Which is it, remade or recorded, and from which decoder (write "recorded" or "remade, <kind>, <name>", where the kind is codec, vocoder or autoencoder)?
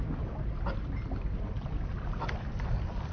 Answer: recorded